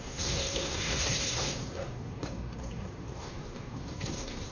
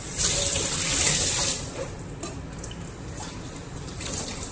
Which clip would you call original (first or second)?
second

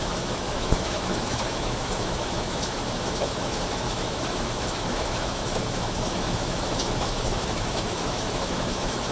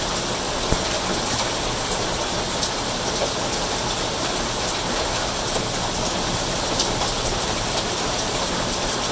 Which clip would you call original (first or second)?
second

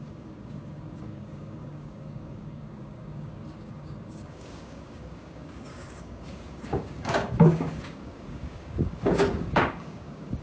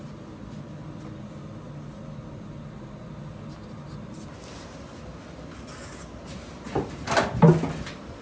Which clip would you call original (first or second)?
second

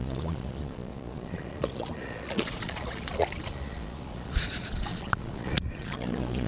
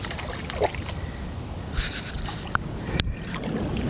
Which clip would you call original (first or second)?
second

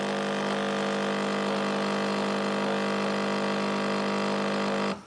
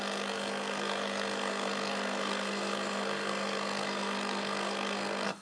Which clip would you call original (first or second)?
first